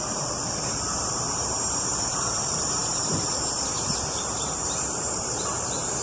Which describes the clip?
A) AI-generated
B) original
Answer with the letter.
A